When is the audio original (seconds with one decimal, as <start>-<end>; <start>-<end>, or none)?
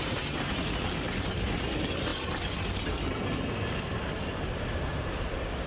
0.0-5.7